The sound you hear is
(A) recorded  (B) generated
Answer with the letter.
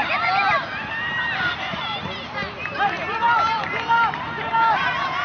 B